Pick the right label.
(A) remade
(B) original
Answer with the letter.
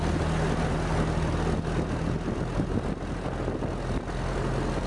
B